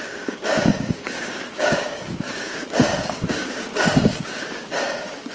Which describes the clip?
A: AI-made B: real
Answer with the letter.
A